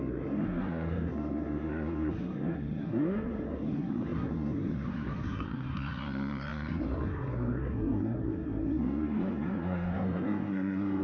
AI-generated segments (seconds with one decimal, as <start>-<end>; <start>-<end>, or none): 0.0-11.0